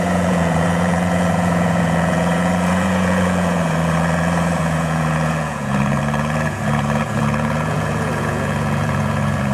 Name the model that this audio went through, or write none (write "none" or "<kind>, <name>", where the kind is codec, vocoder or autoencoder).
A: vocoder, Vocos